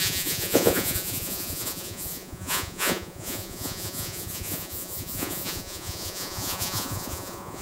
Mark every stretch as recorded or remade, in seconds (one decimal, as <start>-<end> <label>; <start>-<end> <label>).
0.0-7.6 remade